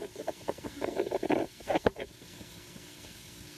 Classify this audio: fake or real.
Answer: fake